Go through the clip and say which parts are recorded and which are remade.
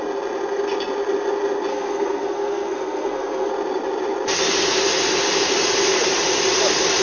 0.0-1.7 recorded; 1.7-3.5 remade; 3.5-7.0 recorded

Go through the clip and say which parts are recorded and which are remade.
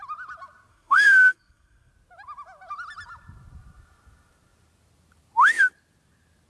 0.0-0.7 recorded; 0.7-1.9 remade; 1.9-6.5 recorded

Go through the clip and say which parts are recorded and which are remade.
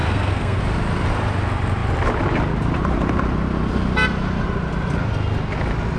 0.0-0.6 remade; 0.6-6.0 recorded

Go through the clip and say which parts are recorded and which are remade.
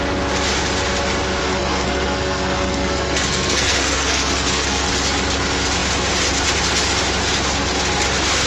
0.0-1.4 recorded; 1.4-4.9 remade; 4.9-8.5 recorded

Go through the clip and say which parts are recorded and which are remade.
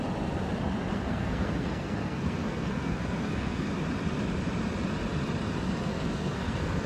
0.0-0.9 recorded; 0.9-3.7 remade; 3.7-5.9 recorded; 5.9-6.9 remade